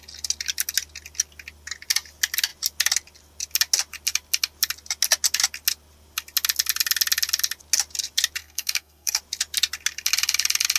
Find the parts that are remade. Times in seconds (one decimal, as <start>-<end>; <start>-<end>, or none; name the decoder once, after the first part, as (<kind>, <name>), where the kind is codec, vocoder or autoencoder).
8.4-9.2 (codec, SNAC)